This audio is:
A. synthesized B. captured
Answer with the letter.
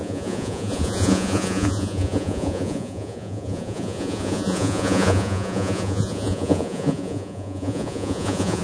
A